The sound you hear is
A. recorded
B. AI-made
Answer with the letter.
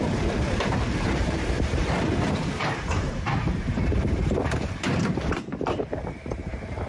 B